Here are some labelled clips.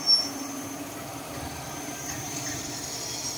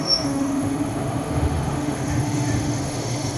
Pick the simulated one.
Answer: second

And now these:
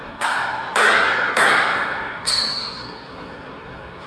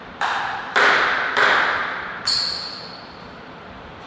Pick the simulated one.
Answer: first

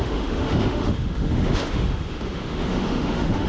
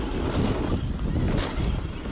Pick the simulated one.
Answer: first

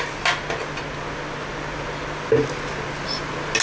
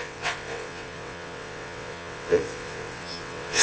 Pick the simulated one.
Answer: second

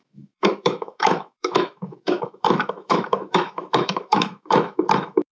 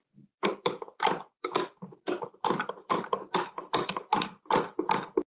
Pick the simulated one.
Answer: first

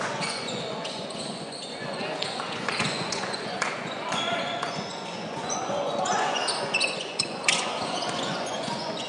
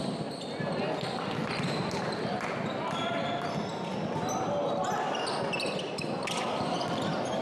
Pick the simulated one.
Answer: first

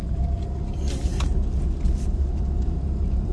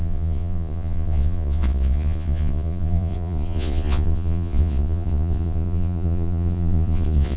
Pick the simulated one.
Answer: second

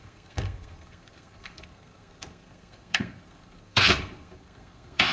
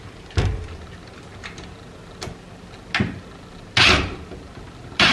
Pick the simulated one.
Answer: first